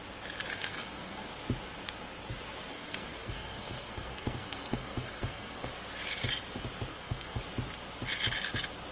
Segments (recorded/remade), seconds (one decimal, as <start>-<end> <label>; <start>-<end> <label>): 0.0-0.5 recorded; 0.5-1.3 remade; 1.3-2.7 recorded; 2.7-5.7 remade; 5.7-6.9 recorded; 6.9-7.4 remade; 7.4-8.9 recorded